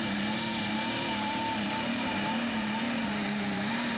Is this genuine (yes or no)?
no